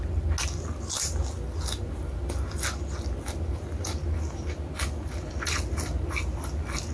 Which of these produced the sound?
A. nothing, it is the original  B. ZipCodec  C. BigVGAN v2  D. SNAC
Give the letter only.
A